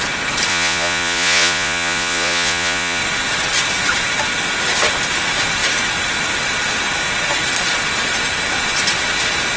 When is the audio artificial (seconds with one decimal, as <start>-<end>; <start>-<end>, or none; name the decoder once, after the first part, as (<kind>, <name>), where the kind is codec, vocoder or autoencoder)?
0.5-3.0 (vocoder, Vocos)